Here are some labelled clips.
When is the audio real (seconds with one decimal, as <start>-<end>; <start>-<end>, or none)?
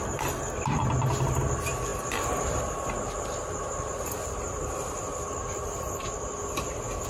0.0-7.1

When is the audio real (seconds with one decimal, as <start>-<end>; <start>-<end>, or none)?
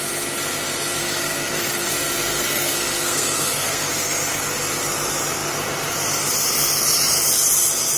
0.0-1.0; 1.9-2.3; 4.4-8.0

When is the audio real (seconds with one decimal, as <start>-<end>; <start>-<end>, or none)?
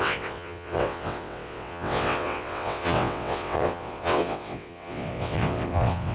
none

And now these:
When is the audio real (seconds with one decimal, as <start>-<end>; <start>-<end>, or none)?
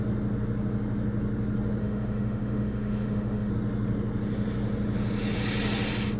0.0-1.8; 3.5-6.2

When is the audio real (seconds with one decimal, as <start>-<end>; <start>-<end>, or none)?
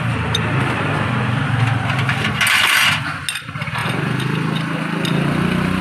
0.0-5.8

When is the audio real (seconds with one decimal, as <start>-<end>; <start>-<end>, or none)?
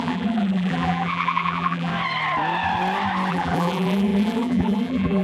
1.9-3.3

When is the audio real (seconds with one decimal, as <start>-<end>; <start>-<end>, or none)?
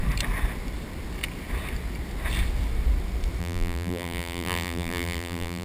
0.0-3.4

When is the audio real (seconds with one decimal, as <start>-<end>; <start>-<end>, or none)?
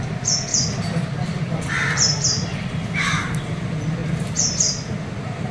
0.0-5.5